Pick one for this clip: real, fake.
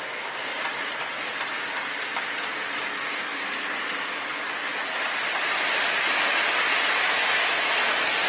real